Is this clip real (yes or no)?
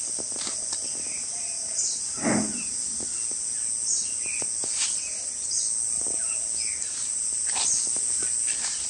yes